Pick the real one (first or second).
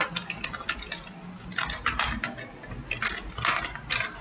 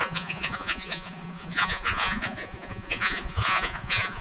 first